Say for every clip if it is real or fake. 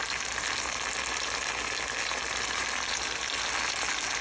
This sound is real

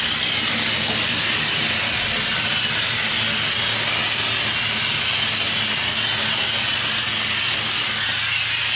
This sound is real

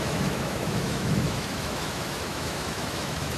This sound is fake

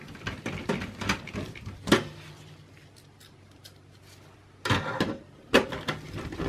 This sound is real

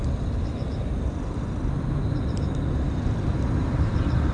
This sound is real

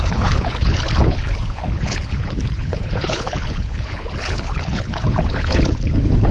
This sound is fake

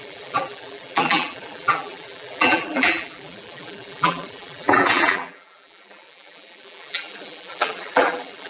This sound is fake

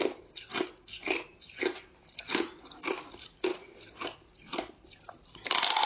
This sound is real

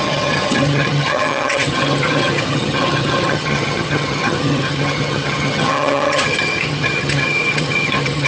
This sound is fake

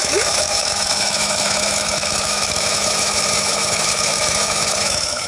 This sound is fake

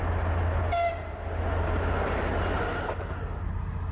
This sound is real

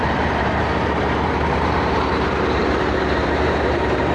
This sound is fake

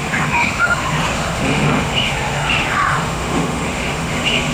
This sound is fake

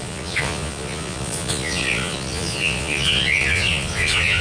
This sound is fake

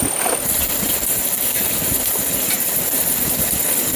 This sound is real